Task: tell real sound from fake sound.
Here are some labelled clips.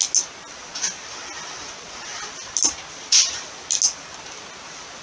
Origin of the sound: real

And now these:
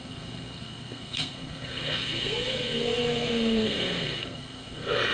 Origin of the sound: fake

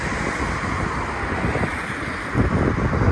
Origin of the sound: real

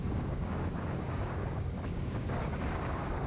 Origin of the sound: fake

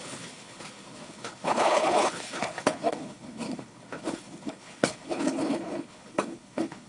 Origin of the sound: fake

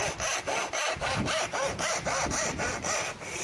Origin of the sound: real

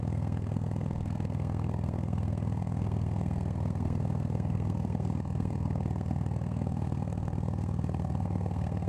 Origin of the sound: fake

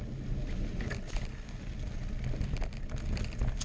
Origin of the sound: real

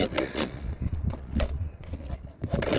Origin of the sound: fake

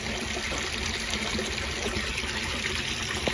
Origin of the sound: real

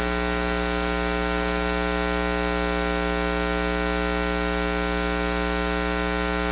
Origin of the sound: real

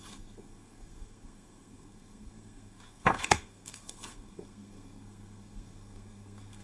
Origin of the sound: fake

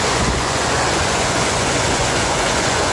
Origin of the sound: fake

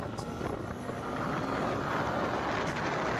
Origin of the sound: real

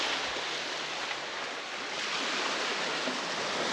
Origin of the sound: real